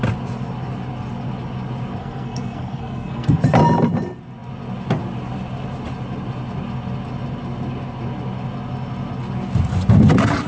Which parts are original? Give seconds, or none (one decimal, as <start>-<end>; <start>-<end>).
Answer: 0.0-2.0; 3.4-10.5